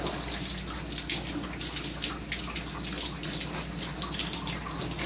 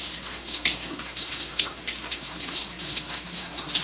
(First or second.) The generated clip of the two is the second